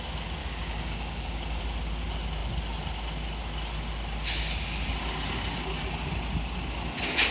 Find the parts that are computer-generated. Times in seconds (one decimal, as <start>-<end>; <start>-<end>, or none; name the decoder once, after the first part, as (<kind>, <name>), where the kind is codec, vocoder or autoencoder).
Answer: 0.4-1.6 (codec, DAC)